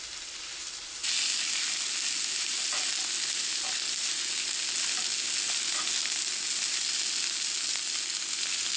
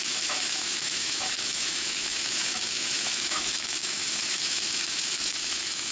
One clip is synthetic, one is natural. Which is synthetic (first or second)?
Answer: second